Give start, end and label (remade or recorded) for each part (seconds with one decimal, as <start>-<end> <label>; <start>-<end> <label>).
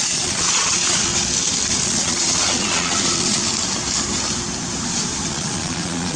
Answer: 0.0-1.1 remade; 1.1-1.8 recorded; 1.8-3.4 remade; 3.4-5.3 recorded; 5.3-6.2 remade